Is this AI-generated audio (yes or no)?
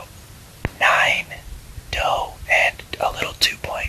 no